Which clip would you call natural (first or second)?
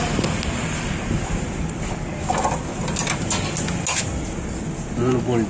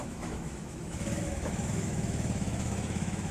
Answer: first